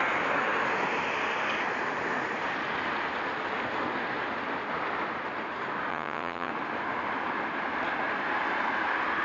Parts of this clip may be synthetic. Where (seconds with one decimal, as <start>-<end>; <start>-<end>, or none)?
5.9-6.5

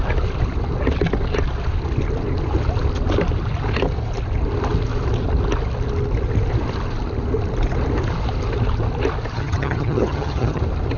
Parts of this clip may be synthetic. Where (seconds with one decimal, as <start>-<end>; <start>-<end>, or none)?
9.3-10.6

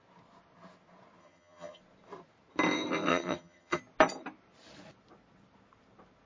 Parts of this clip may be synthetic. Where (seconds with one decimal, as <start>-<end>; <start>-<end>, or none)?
1.2-1.8; 3.1-3.8

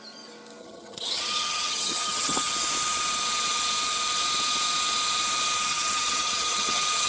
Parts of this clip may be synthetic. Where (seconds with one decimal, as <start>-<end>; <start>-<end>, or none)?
0.6-2.5; 5.7-7.1

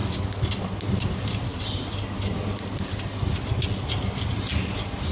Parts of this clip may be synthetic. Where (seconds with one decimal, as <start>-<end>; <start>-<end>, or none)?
none

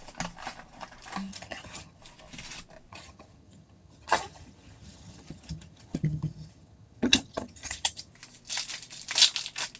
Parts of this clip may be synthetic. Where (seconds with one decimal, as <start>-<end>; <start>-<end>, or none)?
1.3-2.0; 2.9-8.1

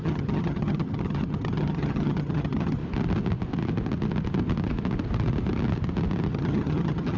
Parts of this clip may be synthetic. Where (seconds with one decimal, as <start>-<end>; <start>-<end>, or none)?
0.0-2.8; 6.3-7.2